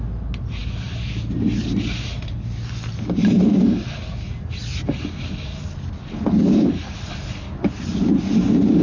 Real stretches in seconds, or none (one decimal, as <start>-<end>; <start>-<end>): 0.0-8.8